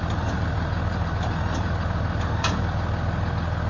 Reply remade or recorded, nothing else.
recorded